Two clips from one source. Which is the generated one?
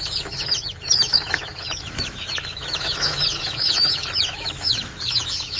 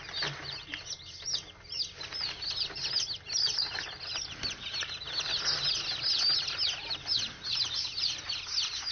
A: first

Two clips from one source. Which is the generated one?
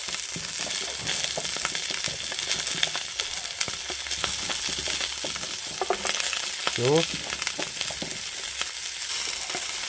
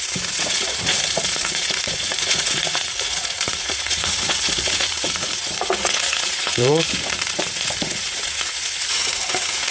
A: second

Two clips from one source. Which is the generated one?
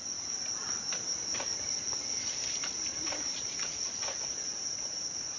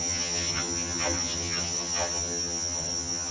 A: second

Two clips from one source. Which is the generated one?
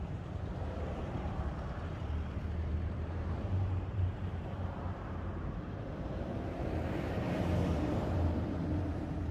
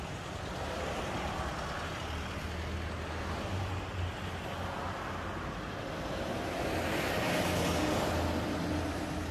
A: first